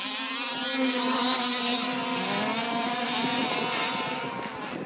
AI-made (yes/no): no